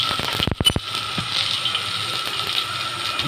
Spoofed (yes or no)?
no